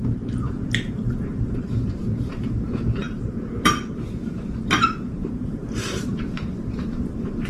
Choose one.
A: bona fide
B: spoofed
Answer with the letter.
B